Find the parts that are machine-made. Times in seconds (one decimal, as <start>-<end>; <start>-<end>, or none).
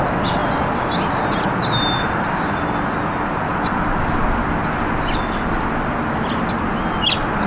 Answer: none